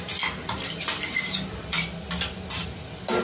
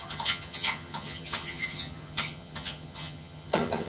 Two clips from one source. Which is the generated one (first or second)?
second